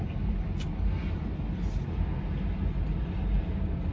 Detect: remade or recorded recorded